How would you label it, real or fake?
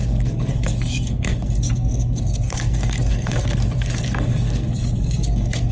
fake